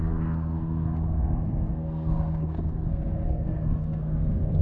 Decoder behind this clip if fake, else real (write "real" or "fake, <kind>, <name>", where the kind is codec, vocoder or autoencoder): fake, codec, SNAC